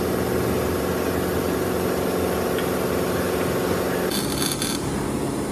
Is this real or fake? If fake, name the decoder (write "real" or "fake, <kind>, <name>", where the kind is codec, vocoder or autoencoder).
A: real